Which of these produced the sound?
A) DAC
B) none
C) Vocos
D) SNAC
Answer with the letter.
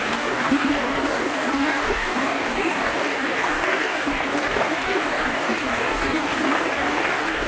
A